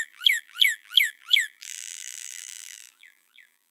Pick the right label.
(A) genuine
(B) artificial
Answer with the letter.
B